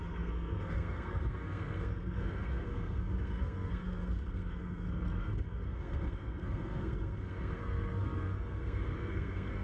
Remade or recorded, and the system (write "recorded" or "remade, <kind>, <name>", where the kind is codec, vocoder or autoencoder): remade, codec, SNAC